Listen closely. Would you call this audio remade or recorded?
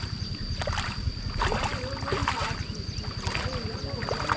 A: recorded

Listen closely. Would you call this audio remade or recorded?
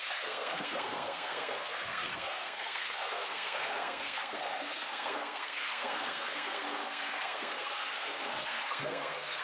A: remade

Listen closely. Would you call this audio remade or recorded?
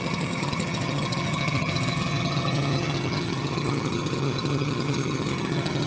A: remade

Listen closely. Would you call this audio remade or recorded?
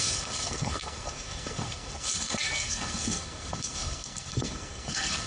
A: remade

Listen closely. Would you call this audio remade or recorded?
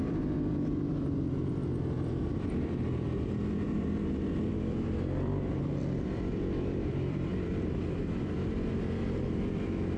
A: remade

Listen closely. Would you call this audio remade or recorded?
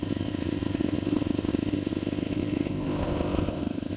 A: remade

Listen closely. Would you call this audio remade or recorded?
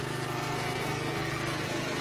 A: remade